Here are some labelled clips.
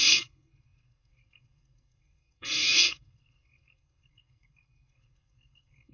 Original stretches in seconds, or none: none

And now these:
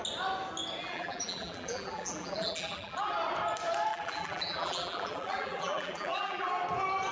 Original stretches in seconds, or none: 0.0-0.8; 3.1-3.9; 6.5-7.1